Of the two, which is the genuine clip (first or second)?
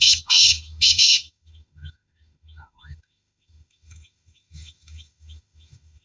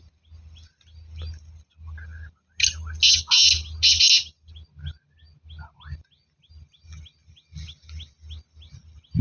second